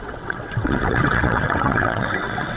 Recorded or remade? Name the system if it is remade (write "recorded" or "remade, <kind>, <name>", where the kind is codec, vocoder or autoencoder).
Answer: remade, vocoder, WaveNeXt